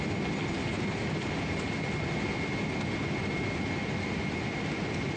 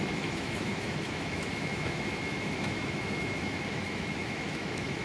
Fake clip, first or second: second